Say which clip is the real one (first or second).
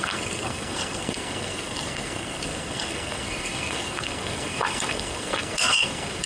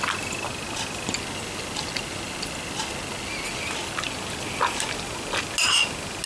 second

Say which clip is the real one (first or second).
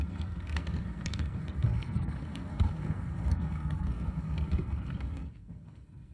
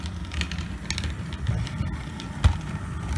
second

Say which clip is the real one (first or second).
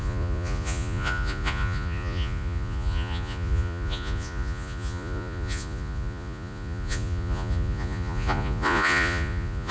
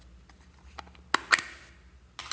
second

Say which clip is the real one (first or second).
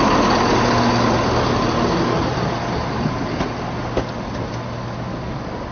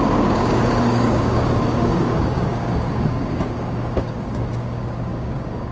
first